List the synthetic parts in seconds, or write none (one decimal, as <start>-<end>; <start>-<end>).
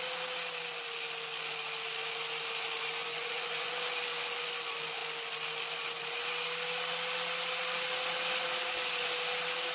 3.0-3.7